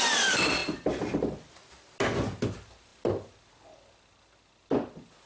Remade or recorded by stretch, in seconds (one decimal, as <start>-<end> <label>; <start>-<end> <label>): 0.0-5.3 recorded